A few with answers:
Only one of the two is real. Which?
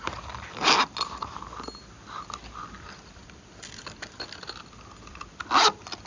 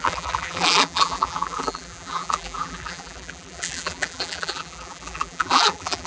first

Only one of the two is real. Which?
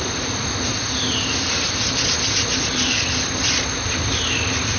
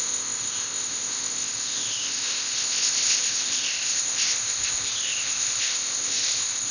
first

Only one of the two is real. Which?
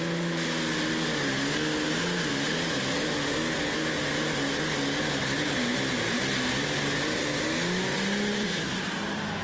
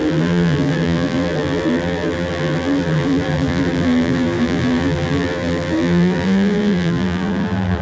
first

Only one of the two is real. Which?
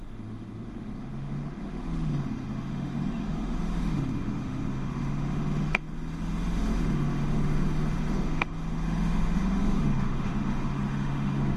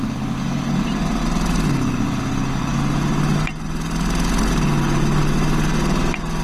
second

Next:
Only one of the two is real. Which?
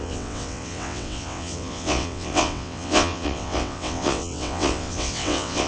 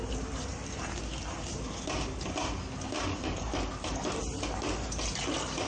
second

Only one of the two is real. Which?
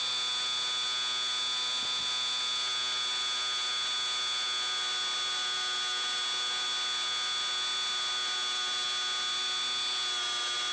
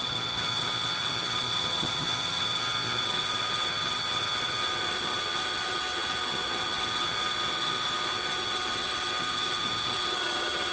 first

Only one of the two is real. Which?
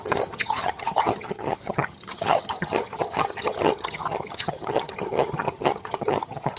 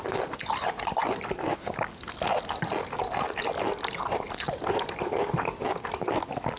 second